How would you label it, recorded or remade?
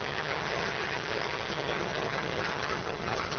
remade